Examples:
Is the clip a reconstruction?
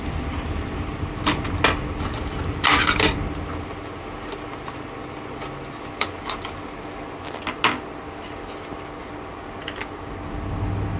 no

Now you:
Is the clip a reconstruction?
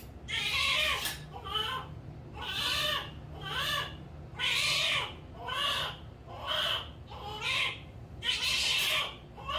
no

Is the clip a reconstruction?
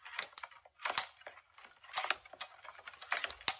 no